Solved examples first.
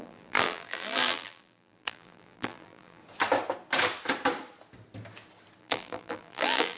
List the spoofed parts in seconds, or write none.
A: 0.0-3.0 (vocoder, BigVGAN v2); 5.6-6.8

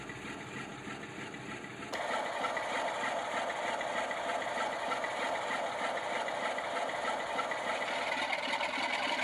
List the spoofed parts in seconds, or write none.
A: none

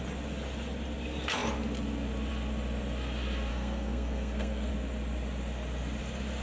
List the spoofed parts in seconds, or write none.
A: 3.5-4.7 (codec, SNAC)